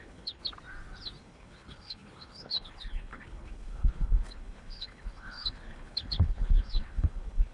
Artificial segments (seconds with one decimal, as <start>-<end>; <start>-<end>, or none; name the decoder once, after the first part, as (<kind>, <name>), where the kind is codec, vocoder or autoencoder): 0.0-0.4 (codec, HILCodec); 1.2-7.5